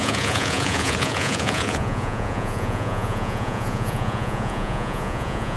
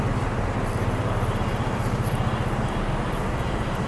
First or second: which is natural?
second